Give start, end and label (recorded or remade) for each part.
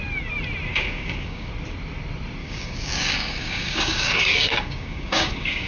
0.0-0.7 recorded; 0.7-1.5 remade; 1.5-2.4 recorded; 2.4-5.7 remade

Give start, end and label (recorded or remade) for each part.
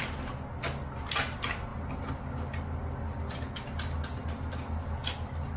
0.0-5.6 recorded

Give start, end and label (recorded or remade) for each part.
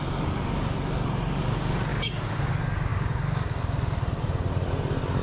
0.0-1.9 recorded; 1.9-2.5 remade; 2.5-2.9 recorded; 2.9-3.6 remade; 3.6-5.2 recorded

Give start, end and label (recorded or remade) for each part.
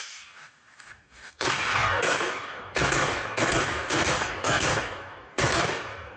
0.0-6.2 remade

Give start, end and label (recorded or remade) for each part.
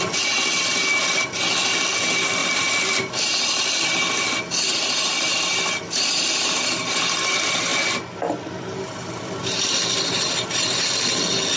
0.0-11.6 recorded